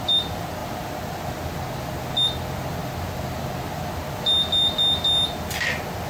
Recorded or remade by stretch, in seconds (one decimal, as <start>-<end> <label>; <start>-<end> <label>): 0.0-6.1 recorded